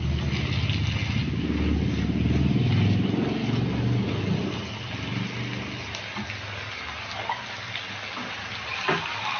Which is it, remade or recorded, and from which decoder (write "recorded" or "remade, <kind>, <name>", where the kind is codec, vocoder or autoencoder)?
recorded